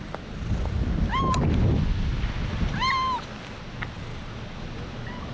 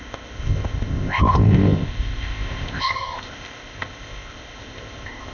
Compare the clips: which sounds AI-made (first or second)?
second